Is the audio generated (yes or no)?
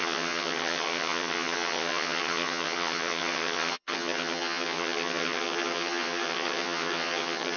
yes